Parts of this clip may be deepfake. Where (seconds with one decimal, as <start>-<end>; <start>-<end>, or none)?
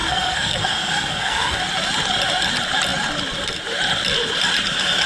0.0-1.6